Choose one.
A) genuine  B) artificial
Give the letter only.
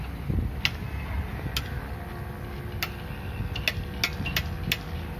A